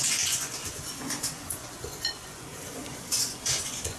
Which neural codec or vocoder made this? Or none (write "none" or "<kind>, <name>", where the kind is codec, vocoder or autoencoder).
vocoder, Vocos